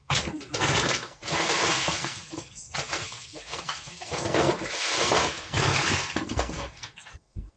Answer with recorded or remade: remade